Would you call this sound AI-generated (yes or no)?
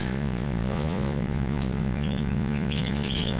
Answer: yes